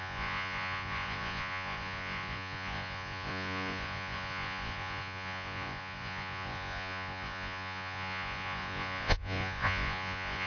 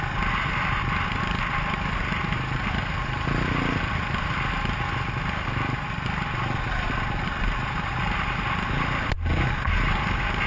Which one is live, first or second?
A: second